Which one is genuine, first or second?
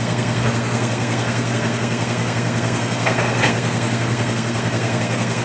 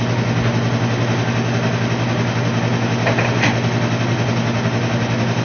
second